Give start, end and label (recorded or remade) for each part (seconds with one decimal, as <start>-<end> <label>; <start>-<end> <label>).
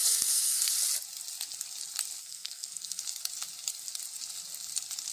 0.0-0.7 remade; 0.7-2.2 recorded; 2.2-3.0 remade; 3.0-5.1 recorded